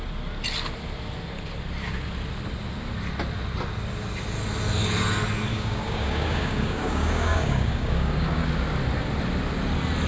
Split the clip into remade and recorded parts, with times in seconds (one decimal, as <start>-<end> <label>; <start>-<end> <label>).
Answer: 0.0-5.5 recorded; 5.5-8.5 remade; 8.5-10.1 recorded